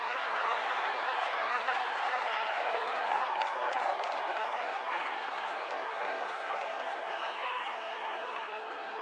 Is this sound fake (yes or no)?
yes